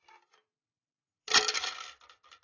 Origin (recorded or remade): recorded